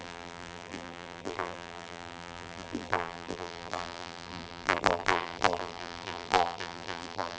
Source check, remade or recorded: remade